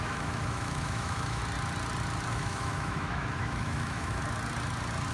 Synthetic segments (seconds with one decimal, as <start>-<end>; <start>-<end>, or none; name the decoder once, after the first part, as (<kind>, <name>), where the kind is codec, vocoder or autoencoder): 0.0-1.4 (autoencoder, DAC-VAE); 2.3-4.2